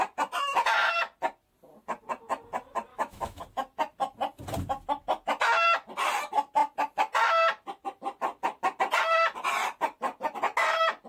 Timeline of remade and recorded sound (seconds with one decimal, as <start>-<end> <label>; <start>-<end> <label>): 0.0-2.9 recorded; 2.9-3.4 remade; 3.4-11.1 recorded